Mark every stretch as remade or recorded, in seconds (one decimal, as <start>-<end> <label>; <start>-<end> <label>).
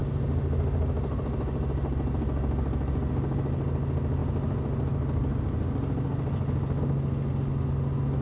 0.0-8.2 recorded